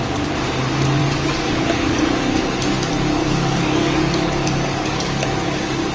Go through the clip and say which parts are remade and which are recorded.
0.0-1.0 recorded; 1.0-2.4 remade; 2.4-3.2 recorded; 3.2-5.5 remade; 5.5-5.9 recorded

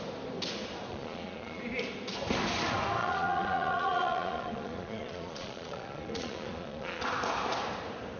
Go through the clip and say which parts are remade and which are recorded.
0.0-0.9 recorded; 0.9-1.6 remade; 1.6-3.0 recorded; 3.0-7.0 remade; 7.0-8.2 recorded

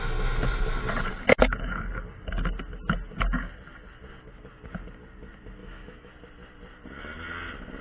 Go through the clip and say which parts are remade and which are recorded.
0.0-5.6 recorded; 5.6-6.1 remade; 6.1-7.8 recorded